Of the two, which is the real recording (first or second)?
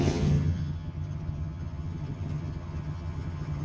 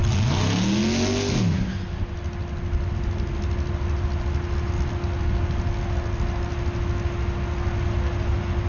second